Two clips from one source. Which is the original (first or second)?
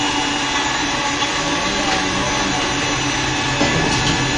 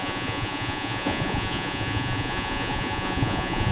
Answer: first